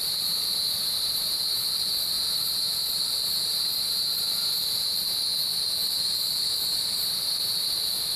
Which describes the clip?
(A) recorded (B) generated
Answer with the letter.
A